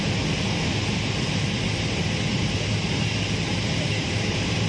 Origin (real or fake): real